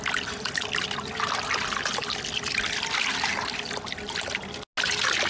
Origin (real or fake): real